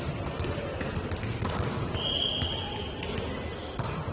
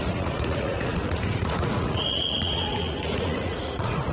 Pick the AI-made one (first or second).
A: second